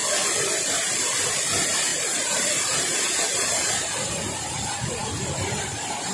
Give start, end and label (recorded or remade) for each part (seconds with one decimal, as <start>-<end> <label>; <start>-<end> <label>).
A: 0.0-1.9 recorded; 1.9-3.7 remade; 3.7-6.1 recorded